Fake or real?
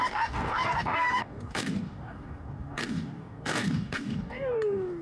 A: fake